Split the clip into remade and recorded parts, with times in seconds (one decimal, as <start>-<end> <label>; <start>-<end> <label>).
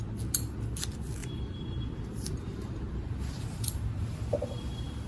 0.0-1.2 recorded; 1.2-4.3 remade; 4.3-5.1 recorded